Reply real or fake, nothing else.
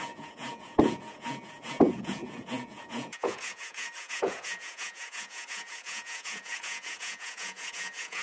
fake